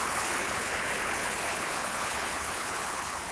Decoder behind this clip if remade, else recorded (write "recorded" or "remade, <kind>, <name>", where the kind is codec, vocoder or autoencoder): remade, codec, HILCodec